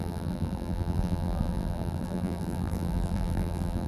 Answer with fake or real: fake